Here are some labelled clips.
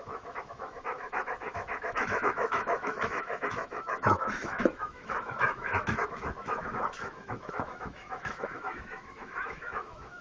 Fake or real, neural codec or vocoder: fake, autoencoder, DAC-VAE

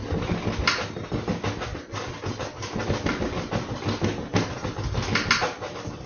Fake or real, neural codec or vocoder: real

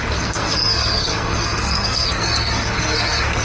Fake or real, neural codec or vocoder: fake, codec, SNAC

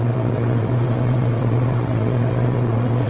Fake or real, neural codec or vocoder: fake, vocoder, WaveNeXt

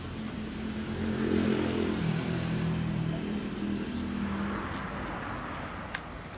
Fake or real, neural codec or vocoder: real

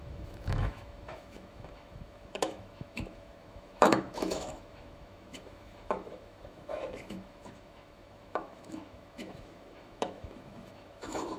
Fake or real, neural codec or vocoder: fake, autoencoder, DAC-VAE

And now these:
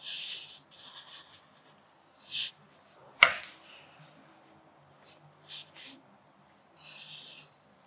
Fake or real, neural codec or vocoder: real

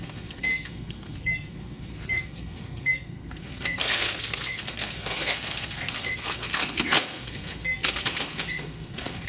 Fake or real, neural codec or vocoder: fake, codec, SNAC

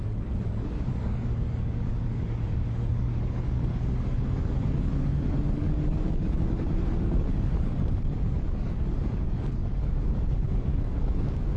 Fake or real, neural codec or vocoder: fake, codec, DAC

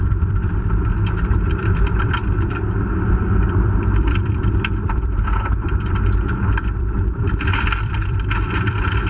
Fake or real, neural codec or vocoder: fake, vocoder, BigVGAN v2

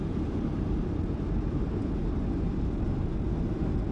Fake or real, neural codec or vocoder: real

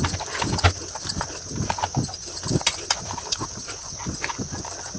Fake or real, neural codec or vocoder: real